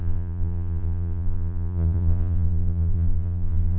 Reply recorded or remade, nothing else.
remade